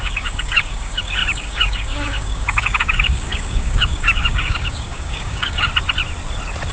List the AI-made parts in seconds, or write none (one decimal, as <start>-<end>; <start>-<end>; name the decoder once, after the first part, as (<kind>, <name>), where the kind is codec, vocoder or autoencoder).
0.0-5.7 (codec, DAC)